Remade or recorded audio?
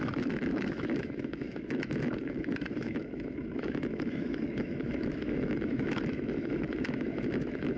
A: remade